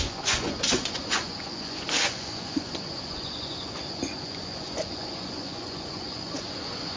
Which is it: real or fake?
fake